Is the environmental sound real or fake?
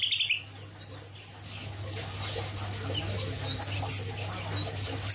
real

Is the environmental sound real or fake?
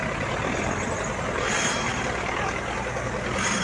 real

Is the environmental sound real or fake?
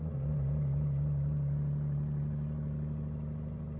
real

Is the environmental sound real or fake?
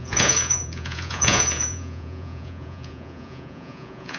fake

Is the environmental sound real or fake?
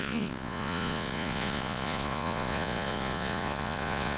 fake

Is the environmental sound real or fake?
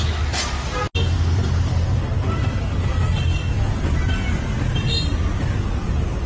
real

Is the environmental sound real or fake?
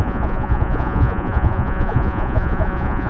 fake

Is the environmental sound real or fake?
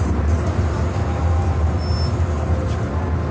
real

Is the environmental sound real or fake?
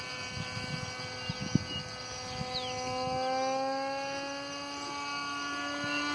real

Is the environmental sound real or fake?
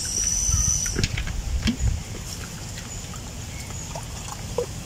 real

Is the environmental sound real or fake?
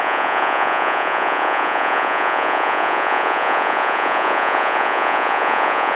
fake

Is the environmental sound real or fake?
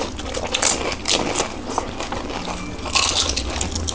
real